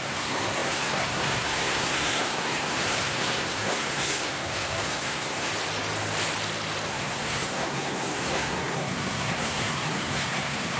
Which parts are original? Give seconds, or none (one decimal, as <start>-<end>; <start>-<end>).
5.5-6.9